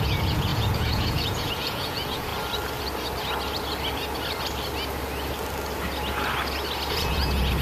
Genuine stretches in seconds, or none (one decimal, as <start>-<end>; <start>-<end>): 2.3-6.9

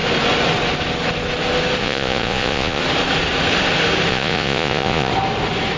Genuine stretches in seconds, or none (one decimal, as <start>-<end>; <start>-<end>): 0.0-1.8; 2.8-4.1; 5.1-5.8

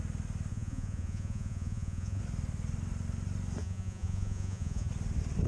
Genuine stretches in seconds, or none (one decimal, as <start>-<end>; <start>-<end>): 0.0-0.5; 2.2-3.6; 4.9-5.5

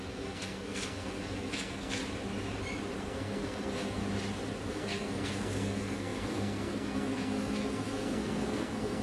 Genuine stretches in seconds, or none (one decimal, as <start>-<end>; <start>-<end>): 2.0-3.0; 4.0-4.7

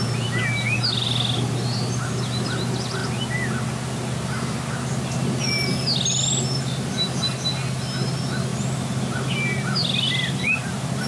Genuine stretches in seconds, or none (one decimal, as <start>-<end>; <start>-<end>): 0.0-11.1